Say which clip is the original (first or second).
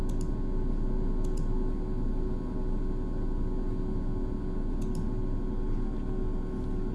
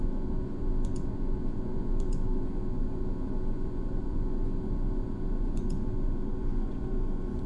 first